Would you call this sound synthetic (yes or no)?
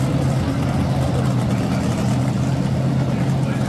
no